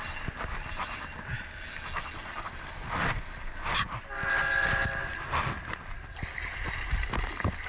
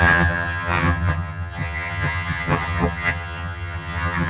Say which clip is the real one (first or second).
first